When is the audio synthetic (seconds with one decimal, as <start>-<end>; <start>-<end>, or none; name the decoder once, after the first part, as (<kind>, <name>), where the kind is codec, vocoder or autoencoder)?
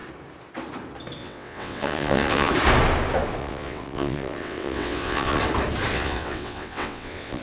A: 1.2-2.5 (vocoder, WaveNeXt); 3.4-5.4; 5.9-7.4